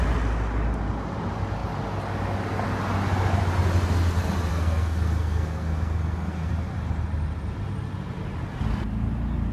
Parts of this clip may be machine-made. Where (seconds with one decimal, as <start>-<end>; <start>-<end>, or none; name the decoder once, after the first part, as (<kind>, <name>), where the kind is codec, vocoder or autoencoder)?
4.5-6.5 (codec, SNAC)